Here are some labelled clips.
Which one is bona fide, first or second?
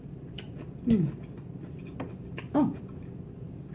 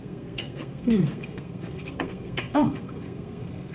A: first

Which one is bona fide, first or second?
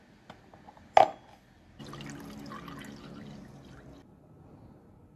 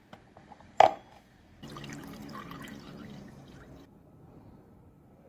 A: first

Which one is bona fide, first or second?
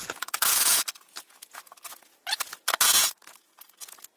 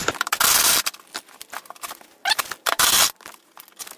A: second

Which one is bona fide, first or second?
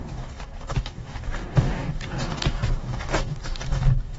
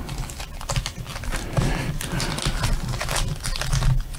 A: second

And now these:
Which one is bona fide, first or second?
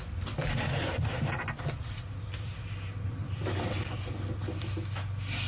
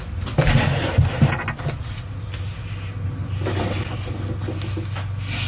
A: second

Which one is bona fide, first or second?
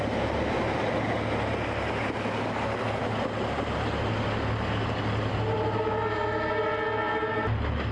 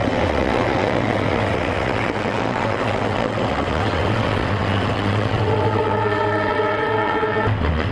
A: first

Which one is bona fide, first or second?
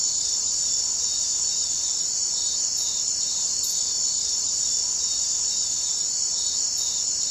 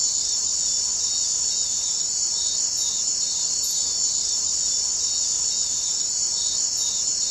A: second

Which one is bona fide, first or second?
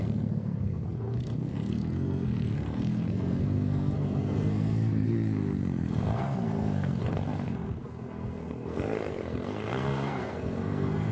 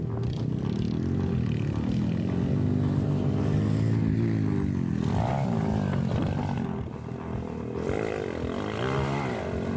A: second